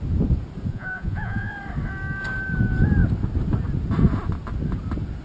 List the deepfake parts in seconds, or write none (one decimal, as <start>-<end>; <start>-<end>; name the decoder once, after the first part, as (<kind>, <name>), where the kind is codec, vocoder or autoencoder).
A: 0.7-1.5 (vocoder, Vocos)